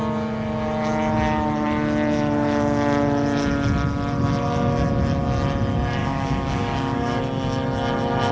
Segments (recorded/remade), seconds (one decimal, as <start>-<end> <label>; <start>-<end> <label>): 0.0-6.0 recorded; 6.0-7.2 remade; 7.2-8.3 recorded